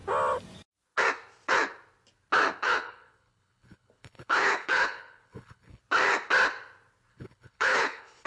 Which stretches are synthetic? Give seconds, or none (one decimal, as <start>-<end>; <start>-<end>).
2.6-5.8; 7.1-8.3

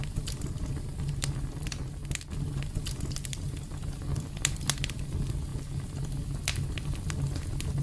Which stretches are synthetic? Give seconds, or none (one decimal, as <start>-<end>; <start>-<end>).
none

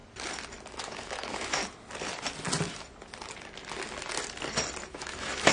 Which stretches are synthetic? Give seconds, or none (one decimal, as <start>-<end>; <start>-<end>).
0.8-1.6; 4.9-5.5

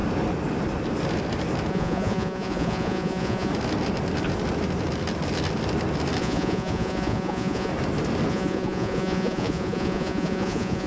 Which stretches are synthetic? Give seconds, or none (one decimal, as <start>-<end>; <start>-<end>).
1.7-3.5; 6.2-7.7; 8.3-10.9

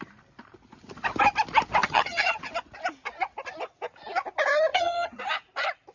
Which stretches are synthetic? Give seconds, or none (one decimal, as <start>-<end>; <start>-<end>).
1.8-2.4; 4.7-5.2

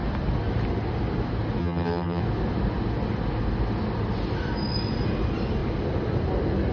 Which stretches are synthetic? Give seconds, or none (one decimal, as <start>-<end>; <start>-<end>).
1.6-2.2

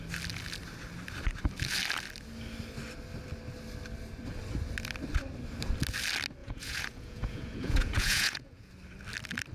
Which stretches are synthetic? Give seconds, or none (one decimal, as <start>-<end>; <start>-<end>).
6.4-8.7